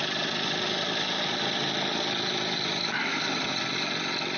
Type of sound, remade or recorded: recorded